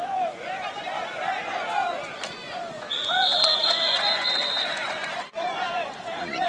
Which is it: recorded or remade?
remade